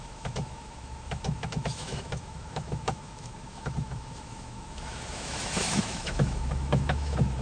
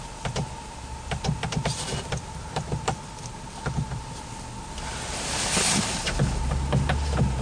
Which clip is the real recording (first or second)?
second